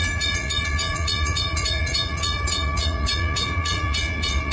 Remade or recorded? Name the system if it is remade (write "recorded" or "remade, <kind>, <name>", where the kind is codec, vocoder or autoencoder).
remade, vocoder, Vocos